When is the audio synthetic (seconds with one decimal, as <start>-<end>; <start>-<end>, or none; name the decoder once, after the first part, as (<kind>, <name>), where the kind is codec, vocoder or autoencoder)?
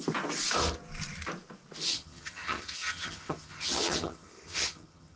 1.9-5.2 (vocoder, HiFi-GAN)